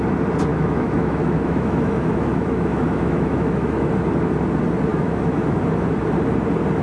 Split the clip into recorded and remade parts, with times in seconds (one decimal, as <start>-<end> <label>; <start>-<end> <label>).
0.0-0.5 recorded; 0.5-3.9 remade; 3.9-4.9 recorded; 4.9-5.6 remade; 5.6-6.8 recorded